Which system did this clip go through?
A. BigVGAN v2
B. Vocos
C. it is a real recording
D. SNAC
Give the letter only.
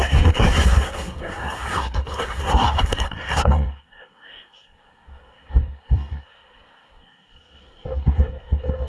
D